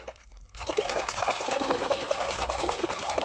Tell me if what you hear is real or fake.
fake